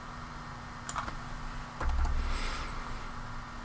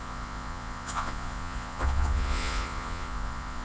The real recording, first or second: first